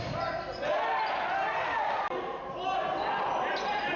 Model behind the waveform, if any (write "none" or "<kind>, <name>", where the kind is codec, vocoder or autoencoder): none